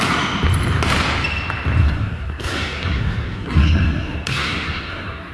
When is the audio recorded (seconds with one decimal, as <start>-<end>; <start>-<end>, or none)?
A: 0.0-1.8